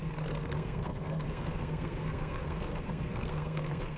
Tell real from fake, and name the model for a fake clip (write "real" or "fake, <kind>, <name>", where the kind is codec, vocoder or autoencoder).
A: fake, codec, SNAC